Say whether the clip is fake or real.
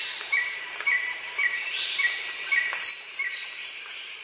fake